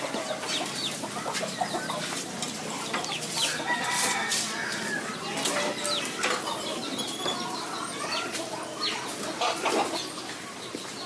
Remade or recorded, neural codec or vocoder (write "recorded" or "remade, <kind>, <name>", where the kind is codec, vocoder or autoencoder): recorded